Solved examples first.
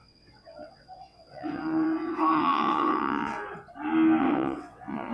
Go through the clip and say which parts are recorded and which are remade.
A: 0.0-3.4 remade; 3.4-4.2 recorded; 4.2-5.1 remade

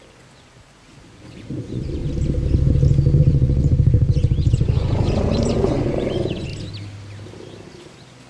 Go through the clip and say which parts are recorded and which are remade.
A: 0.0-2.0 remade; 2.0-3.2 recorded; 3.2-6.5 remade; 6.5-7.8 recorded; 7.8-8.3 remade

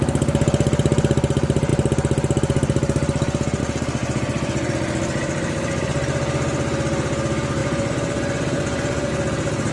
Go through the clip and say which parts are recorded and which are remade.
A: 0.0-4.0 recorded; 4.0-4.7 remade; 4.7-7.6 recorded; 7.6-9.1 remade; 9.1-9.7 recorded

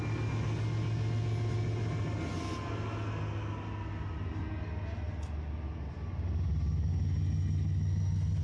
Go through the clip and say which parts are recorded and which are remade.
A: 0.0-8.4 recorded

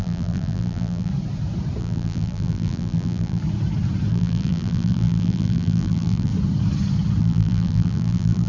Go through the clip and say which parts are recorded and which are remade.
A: 0.0-1.1 remade; 1.1-1.8 recorded; 1.8-3.4 remade; 3.4-4.1 recorded; 4.1-6.3 remade; 6.3-7.2 recorded; 7.2-8.5 remade

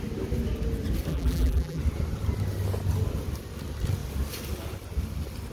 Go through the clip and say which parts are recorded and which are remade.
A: 0.0-1.1 recorded; 1.1-1.8 remade; 1.8-5.5 recorded

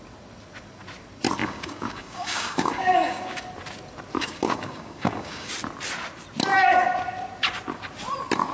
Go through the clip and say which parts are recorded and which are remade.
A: 0.0-1.4 recorded; 1.4-3.4 remade; 3.4-4.2 recorded; 4.2-5.5 remade; 5.5-8.5 recorded